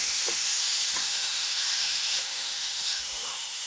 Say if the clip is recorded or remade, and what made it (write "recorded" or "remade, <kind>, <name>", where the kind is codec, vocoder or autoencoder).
remade, autoencoder, DAC-VAE